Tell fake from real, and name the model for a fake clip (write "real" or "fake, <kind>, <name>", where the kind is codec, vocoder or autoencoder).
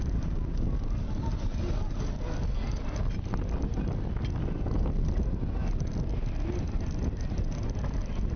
real